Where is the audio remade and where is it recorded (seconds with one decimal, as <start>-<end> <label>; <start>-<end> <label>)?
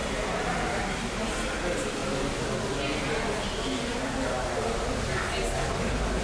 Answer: 0.0-0.8 remade; 0.8-6.2 recorded